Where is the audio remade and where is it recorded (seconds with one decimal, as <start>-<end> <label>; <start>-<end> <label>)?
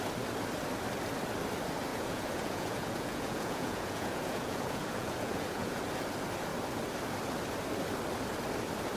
0.0-1.9 recorded; 1.9-5.8 remade; 5.8-9.0 recorded